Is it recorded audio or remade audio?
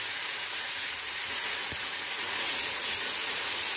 remade